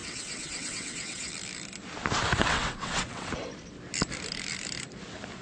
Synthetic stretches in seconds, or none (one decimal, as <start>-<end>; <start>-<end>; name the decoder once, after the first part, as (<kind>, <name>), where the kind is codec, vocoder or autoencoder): 0.0-1.3 (vocoder, WaveNeXt); 2.3-3.3